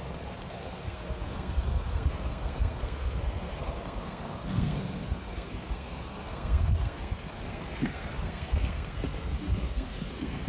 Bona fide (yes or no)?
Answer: no